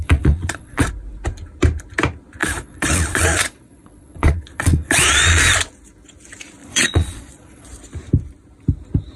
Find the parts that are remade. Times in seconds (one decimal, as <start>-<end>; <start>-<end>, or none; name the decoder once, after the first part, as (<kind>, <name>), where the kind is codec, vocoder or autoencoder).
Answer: 0.0-0.9 (vocoder, Vocos); 2.4-5.4; 6.6-7.7